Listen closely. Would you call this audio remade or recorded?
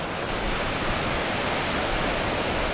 recorded